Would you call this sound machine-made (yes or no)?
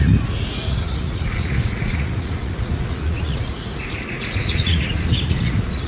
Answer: yes